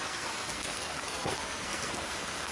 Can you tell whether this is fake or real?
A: fake